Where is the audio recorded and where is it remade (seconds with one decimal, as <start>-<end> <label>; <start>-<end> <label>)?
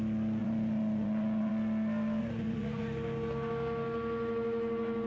0.0-0.4 recorded; 0.4-1.5 remade; 1.5-2.2 recorded; 2.2-2.8 remade; 2.8-5.1 recorded